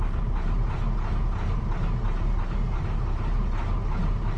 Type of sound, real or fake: real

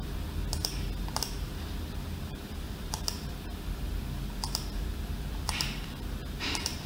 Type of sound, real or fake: fake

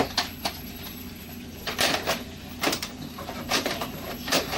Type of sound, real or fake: fake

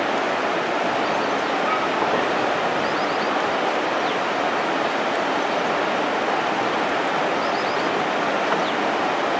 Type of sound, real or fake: real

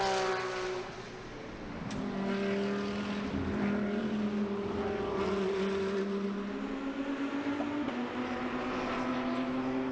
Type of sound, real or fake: real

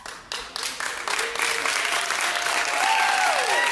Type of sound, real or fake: real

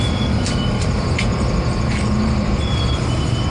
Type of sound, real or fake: fake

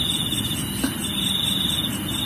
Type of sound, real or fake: real